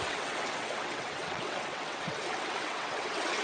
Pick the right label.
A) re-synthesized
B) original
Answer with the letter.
A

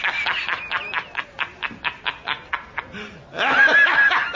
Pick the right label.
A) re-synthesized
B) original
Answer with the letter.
B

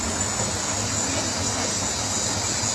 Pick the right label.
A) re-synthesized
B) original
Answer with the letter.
B